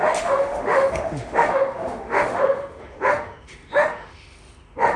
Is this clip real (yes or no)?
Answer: no